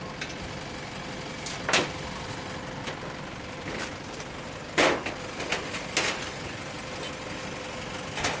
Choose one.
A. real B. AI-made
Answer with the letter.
A